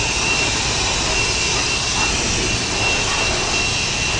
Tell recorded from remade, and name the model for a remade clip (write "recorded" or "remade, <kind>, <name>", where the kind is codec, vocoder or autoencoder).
recorded